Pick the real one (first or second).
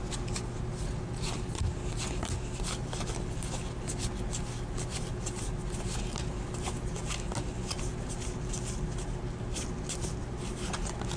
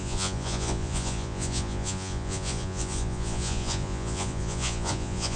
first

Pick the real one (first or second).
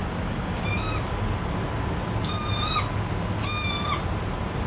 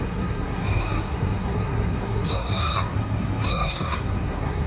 first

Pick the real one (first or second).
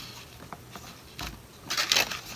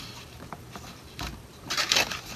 first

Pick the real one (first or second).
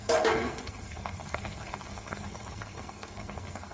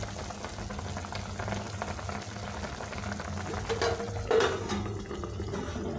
second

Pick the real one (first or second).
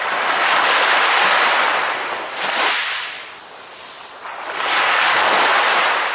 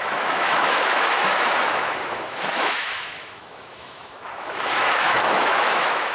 first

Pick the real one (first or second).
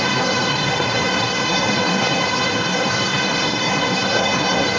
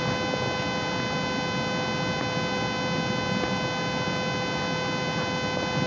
second